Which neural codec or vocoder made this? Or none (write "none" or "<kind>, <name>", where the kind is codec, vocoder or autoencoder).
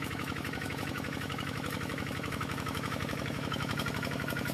autoencoder, DAC-VAE